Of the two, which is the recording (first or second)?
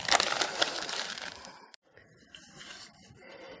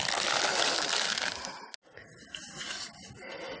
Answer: second